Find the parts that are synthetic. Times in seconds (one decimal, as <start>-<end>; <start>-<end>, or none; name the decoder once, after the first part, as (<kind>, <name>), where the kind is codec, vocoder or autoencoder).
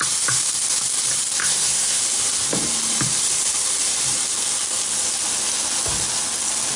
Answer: 1.4-2.0 (codec, SNAC)